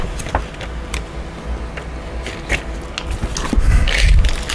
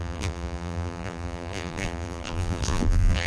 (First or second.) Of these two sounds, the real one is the first